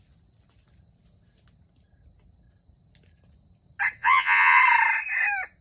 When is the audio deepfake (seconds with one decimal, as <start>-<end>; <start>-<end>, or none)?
4.0-4.6